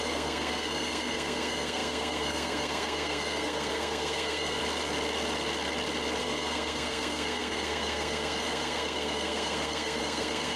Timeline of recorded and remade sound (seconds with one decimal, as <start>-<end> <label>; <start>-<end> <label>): 0.0-4.6 remade; 4.6-6.2 recorded; 6.2-10.6 remade

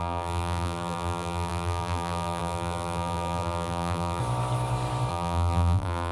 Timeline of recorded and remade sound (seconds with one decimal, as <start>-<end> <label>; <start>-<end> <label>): 0.0-4.2 remade; 4.2-5.1 recorded; 5.1-6.1 remade

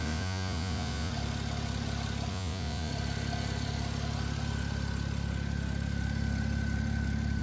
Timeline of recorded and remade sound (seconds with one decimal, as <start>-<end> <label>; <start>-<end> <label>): 0.0-1.1 remade; 1.1-2.3 recorded; 2.3-2.9 remade; 2.9-7.4 recorded

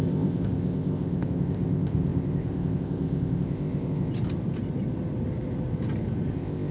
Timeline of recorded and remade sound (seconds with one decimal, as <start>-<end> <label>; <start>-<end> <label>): 0.0-4.1 remade; 4.1-6.3 recorded; 6.3-6.7 remade

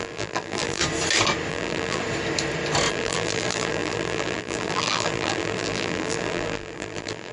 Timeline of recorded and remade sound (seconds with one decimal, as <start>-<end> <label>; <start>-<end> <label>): 0.0-0.8 remade; 0.8-1.5 recorded; 1.5-2.0 remade; 2.0-2.9 recorded; 2.9-7.3 remade

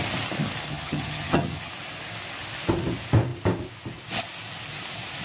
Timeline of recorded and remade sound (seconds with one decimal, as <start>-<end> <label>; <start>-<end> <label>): 0.0-0.7 recorded; 0.7-1.7 remade; 1.7-5.2 recorded